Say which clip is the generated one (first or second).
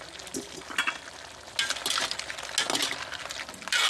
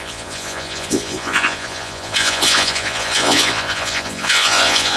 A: second